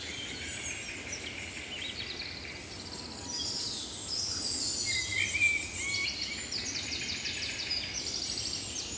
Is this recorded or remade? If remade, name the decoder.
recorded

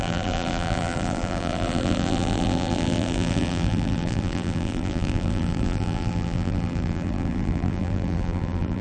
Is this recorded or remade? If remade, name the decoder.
remade, vocoder, BigVGAN v2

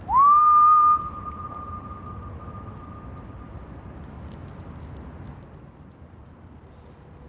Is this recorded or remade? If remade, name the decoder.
recorded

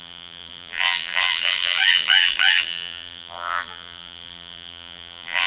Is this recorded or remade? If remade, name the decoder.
remade, vocoder, BigVGAN v2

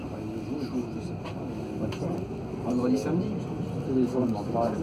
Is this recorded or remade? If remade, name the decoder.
recorded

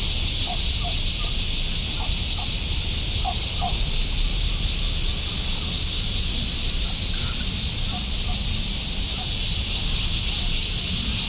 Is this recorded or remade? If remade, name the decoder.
recorded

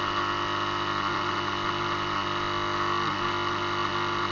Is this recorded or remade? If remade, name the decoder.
recorded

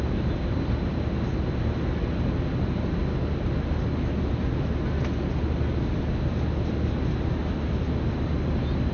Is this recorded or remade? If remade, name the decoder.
recorded